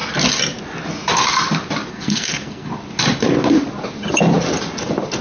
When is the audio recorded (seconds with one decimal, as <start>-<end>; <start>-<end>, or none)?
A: 0.0-1.9; 2.7-5.2